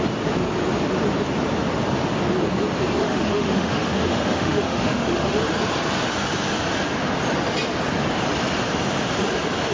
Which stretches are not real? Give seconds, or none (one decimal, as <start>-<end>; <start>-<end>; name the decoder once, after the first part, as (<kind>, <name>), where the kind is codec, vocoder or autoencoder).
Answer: 3.0-5.4 (autoencoder, DAC-VAE)